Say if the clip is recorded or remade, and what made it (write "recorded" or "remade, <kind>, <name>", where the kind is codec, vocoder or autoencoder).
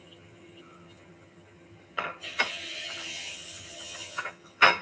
remade, vocoder, HiFi-GAN